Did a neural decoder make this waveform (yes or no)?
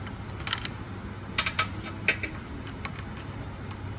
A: no